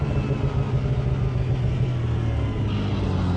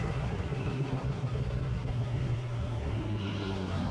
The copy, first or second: second